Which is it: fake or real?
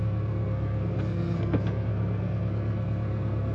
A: fake